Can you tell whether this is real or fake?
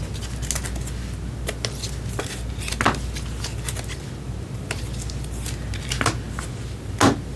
real